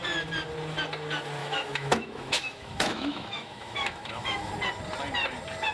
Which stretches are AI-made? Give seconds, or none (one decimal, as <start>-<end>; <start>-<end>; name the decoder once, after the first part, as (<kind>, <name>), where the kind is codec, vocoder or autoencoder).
1.4-4.5 (autoencoder, DAC-VAE)